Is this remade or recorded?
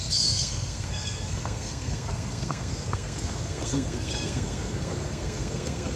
remade